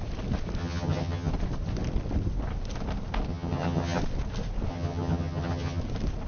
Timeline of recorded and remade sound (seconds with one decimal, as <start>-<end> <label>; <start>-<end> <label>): 0.0-0.6 recorded; 0.6-1.3 remade; 1.3-3.3 recorded; 3.3-4.0 remade; 4.0-4.7 recorded; 4.7-5.8 remade; 5.8-6.3 recorded